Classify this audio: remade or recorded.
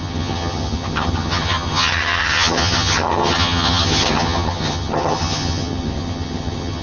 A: remade